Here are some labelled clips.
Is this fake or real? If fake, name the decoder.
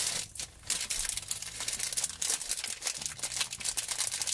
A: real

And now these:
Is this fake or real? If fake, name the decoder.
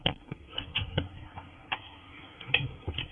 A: fake, codec, SNAC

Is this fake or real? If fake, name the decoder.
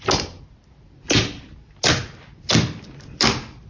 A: real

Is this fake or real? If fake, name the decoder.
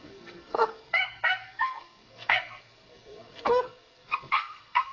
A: fake, codec, SNAC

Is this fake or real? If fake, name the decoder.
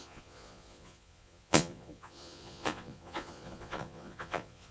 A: fake, vocoder, Vocos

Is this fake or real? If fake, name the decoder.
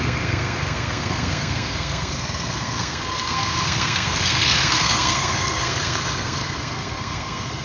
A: fake, codec, SNAC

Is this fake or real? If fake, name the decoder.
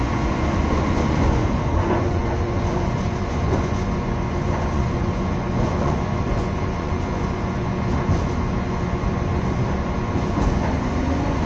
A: fake, vocoder, Vocos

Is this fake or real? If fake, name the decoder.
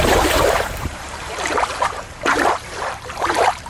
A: fake, vocoder, BigVGAN v2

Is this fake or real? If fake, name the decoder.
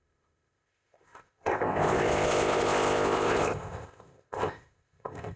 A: fake, codec, ZipCodec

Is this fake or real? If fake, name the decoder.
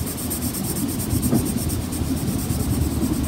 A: real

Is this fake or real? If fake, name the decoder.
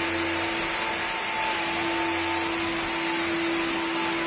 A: real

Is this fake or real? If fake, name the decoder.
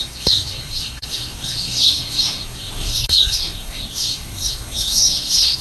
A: fake, codec, SNAC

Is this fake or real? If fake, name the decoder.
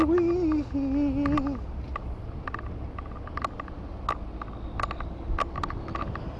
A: real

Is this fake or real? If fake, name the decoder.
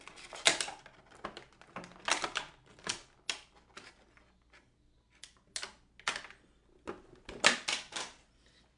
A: real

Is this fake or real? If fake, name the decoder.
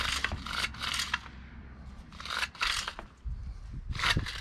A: real